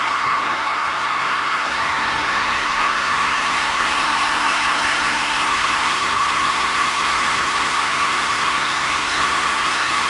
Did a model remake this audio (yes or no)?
yes